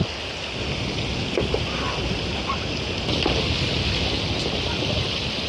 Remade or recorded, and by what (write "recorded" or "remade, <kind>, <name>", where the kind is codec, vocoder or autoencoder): recorded